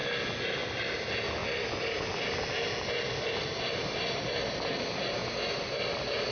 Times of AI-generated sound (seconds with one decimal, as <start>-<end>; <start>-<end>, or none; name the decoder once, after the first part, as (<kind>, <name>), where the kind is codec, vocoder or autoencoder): none

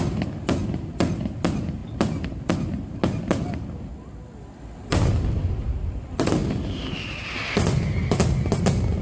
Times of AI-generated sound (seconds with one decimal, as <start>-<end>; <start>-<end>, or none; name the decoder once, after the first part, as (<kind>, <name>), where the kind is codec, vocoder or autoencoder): 6.4-7.5 (vocoder, BigVGAN v2)

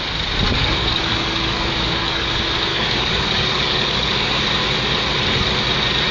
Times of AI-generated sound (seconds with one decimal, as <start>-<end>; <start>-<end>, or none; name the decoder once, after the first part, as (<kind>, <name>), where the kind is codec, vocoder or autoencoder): 0.6-2.3 (codec, DAC); 2.7-4.4

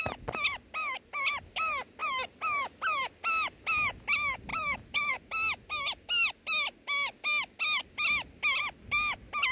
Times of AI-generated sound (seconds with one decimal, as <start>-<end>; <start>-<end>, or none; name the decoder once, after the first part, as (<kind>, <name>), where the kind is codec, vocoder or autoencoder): 4.5-5.1 (autoencoder, DAC-VAE)

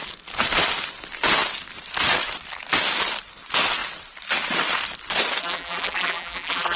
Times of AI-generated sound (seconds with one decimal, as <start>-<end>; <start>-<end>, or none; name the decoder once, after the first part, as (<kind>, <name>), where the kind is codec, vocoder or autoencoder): 5.4-6.8 (vocoder, BigVGAN v2)

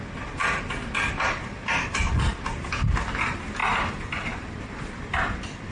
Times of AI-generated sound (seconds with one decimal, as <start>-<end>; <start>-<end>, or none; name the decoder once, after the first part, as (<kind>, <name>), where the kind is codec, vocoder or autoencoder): 3.6-4.8 (vocoder, BigVGAN v2)